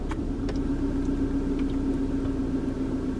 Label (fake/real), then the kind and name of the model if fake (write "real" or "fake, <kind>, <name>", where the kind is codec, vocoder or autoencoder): real